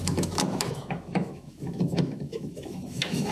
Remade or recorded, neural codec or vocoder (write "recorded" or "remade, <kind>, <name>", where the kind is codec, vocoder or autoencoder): remade, autoencoder, DAC-VAE